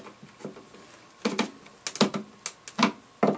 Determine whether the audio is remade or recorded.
recorded